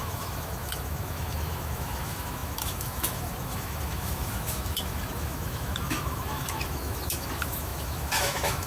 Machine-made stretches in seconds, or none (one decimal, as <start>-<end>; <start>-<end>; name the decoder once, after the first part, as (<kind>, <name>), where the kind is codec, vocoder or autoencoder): 0.0-8.7 (autoencoder, DAC-VAE)